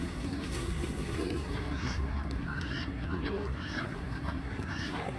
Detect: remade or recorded remade